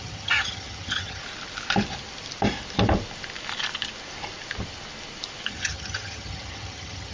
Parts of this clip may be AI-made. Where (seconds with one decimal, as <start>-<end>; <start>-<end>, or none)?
0.0-1.2; 5.5-7.1